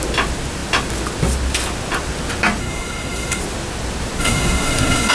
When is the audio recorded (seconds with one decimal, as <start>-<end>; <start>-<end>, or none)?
0.0-2.6; 3.4-4.2